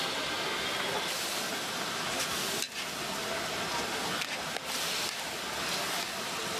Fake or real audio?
real